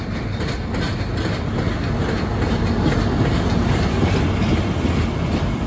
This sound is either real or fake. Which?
real